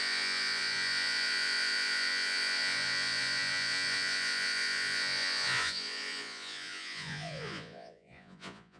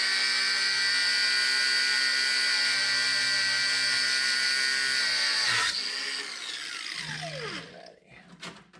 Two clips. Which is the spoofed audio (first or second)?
first